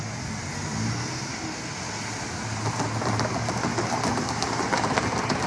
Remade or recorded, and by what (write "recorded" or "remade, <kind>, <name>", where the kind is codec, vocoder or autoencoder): recorded